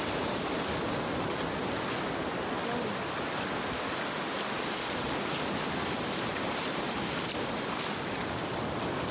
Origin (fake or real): real